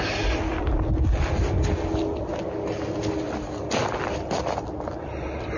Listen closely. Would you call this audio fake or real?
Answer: real